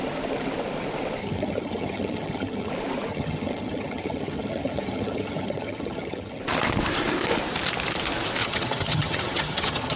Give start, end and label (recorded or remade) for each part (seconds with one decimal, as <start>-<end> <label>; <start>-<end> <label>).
0.0-1.2 recorded; 1.2-2.7 remade; 2.7-3.1 recorded; 3.1-6.4 remade; 6.4-8.4 recorded; 8.4-10.0 remade

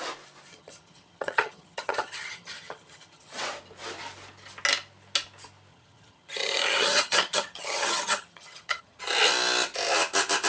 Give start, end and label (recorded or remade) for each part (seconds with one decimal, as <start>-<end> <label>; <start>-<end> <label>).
0.0-0.5 recorded; 0.5-3.4 remade; 3.4-5.7 recorded; 5.7-9.0 remade; 9.0-10.5 recorded

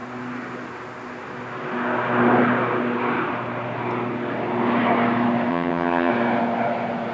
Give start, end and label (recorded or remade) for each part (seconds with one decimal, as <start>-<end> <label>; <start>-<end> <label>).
0.0-5.5 recorded; 5.5-6.1 remade; 6.1-7.1 recorded

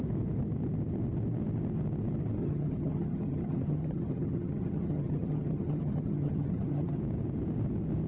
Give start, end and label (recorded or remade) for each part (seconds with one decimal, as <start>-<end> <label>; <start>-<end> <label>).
0.0-2.4 recorded; 2.4-7.0 remade; 7.0-8.1 recorded

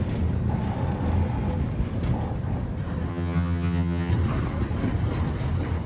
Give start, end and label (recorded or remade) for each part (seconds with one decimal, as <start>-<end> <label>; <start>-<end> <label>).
0.0-3.1 recorded; 3.1-4.1 remade; 4.1-5.9 recorded

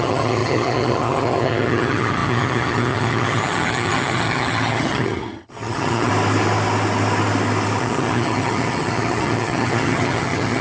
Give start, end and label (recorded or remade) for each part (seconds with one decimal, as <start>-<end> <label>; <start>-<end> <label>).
0.0-6.1 remade; 6.1-7.8 recorded; 7.8-10.6 remade